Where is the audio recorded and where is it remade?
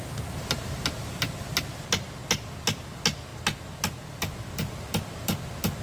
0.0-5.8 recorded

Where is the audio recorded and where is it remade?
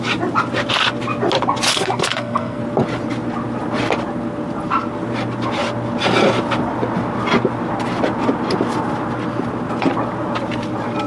0.0-1.7 recorded; 1.7-2.6 remade; 2.6-11.1 recorded